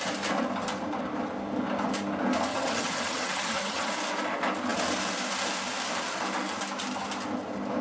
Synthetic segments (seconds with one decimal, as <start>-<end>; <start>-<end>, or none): 2.5-3.9